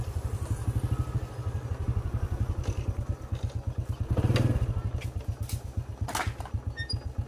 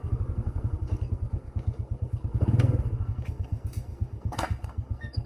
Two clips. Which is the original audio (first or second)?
first